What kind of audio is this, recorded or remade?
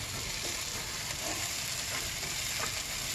remade